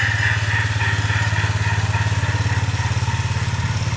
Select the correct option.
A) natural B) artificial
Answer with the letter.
A